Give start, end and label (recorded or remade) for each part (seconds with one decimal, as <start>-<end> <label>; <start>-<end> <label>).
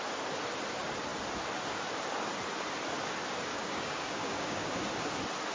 0.0-3.5 recorded; 3.5-4.8 remade; 4.8-5.5 recorded